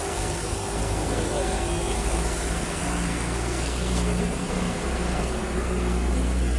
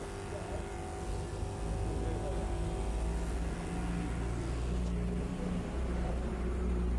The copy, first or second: first